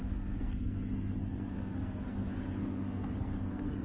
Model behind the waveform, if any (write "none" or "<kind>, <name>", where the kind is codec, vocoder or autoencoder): codec, SNAC